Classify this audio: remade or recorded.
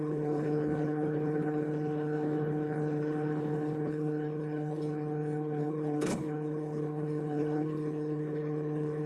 remade